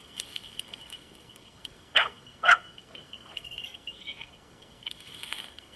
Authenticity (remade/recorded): remade